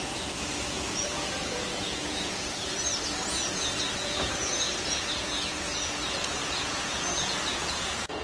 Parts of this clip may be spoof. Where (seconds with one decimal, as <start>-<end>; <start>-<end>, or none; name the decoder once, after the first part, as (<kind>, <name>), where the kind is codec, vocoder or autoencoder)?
0.0-2.7 (vocoder, Vocos); 3.3-8.2